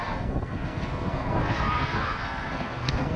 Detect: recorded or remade remade